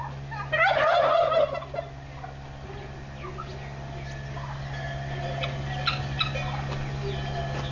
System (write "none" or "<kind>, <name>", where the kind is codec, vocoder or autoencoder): none